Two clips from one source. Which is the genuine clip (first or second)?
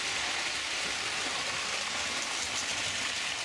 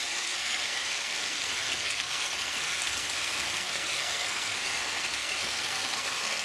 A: first